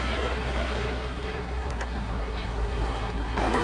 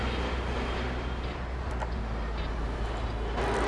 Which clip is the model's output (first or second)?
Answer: first